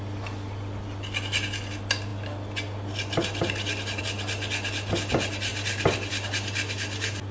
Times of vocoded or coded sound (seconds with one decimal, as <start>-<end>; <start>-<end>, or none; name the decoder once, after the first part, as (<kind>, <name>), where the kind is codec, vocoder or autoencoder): none